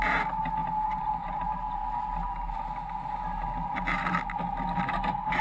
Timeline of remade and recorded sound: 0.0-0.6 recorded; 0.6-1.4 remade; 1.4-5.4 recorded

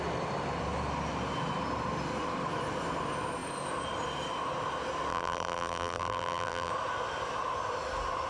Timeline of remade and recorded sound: 0.0-5.1 recorded; 5.1-6.7 remade; 6.7-8.3 recorded